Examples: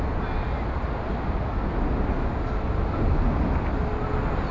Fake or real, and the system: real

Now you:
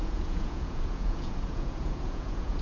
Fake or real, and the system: fake, vocoder, Vocos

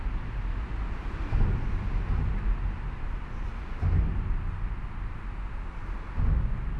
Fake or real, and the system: real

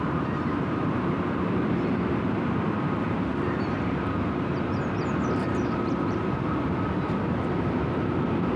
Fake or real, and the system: fake, vocoder, BigVGAN v2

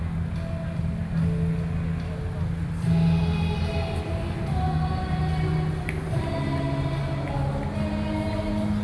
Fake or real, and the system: real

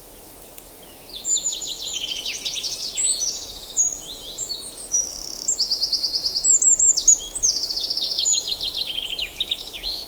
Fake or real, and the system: fake, autoencoder, DAC-VAE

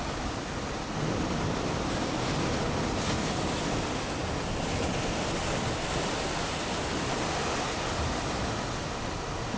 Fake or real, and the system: real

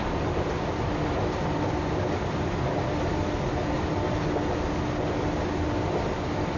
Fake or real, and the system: real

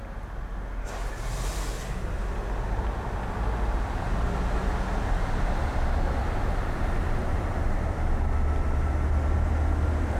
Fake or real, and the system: real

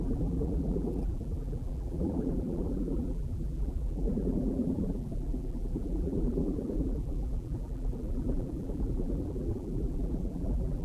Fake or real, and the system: fake, vocoder, BigVGAN v2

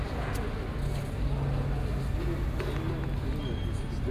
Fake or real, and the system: real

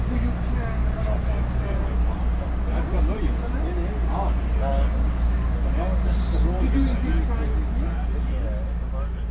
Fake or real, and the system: real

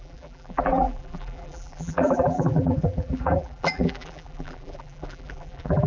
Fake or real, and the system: fake, vocoder, BigVGAN v2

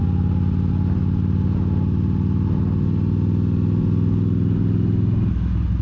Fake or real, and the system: real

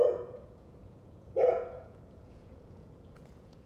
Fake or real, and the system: fake, vocoder, Vocos